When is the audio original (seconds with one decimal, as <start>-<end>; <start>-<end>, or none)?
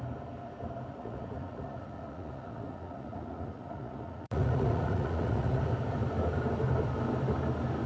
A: 0.0-0.9; 5.6-7.9